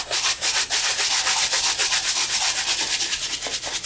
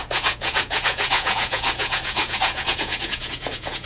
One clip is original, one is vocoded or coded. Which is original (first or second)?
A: first